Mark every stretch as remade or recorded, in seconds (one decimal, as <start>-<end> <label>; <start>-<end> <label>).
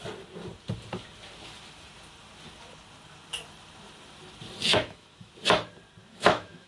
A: 0.0-4.7 recorded; 4.7-5.3 remade; 5.3-6.0 recorded; 6.0-6.7 remade